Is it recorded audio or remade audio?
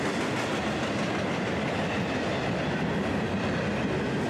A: recorded